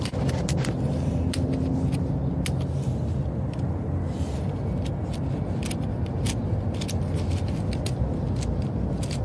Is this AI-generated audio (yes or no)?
no